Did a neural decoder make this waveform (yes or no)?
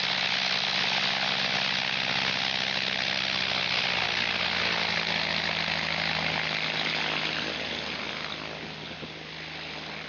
no